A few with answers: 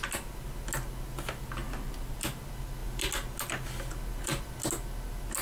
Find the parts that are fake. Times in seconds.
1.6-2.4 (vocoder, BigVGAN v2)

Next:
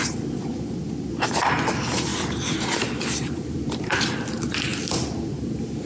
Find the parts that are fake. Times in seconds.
2.1-4.0 (vocoder, BigVGAN v2)